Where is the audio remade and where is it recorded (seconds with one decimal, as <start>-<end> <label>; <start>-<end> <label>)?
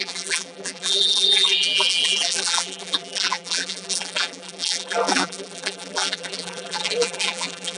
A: 0.0-7.8 remade